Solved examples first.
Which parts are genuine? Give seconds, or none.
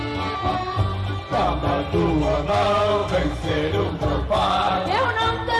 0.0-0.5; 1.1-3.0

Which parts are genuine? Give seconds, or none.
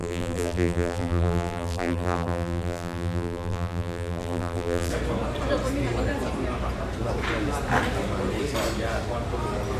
4.9-9.8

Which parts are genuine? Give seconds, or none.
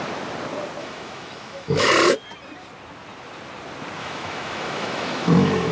0.0-0.8; 1.9-4.0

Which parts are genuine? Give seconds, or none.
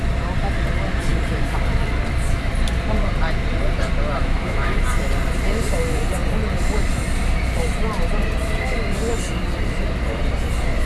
0.0-4.2; 4.8-10.9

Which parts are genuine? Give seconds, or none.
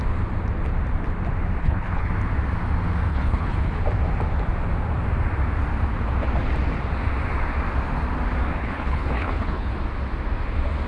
0.0-1.6; 2.1-3.1; 3.8-8.6; 9.7-10.9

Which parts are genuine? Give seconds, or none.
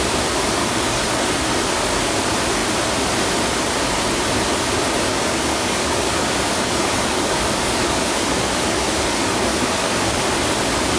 0.0-0.6; 1.3-5.1; 10.2-11.0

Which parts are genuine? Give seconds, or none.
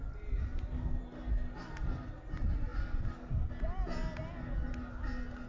0.0-5.5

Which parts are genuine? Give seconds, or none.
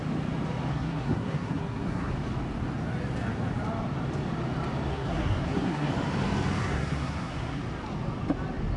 0.0-0.7; 2.1-4.9; 5.9-6.6; 7.6-8.8